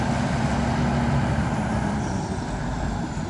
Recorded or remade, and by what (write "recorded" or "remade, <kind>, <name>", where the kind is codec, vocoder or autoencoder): remade, vocoder, BigVGAN v2